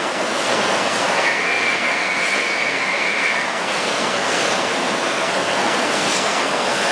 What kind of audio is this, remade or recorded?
remade